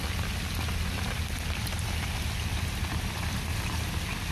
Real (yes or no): yes